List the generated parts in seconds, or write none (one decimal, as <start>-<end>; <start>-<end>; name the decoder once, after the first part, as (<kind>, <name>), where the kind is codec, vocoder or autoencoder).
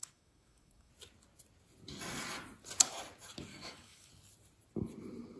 0.0-0.9 (autoencoder, DAC-VAE); 3.5-4.1